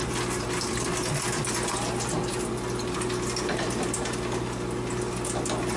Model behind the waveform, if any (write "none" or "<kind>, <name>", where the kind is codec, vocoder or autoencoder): none